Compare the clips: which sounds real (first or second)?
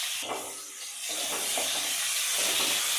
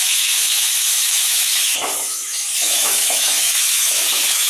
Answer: first